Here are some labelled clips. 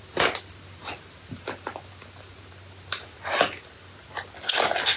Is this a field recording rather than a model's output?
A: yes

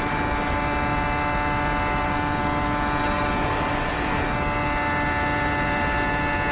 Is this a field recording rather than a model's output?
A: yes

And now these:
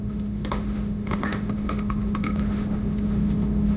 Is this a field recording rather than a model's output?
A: no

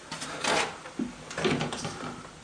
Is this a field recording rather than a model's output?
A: yes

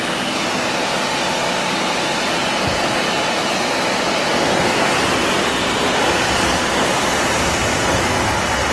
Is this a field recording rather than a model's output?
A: yes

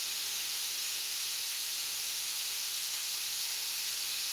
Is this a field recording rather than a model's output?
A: no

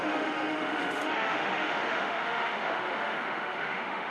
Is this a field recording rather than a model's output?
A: no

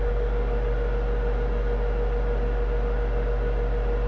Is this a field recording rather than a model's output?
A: yes